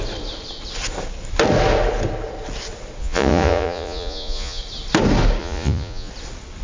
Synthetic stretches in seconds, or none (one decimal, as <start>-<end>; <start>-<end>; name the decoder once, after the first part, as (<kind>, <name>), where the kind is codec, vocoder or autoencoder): 3.0-4.6 (vocoder, Vocos); 5.4-6.1